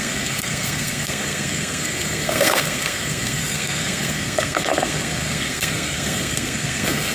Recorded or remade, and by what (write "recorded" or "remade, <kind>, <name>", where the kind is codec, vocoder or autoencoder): remade, codec, SNAC